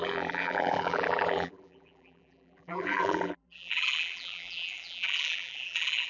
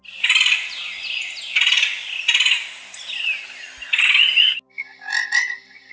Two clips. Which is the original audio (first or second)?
second